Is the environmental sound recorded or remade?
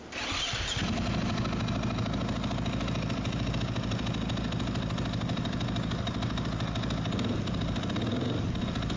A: recorded